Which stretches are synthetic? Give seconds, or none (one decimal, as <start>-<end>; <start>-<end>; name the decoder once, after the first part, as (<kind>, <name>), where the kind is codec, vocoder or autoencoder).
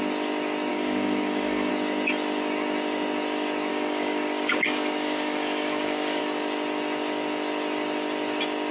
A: 0.7-1.7 (codec, DAC); 3.7-6.2